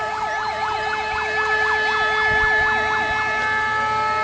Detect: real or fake real